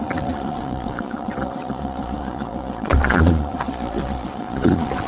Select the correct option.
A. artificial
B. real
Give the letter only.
A